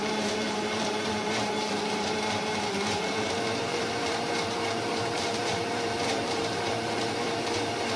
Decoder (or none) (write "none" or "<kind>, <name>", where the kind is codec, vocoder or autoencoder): vocoder, BigVGAN v2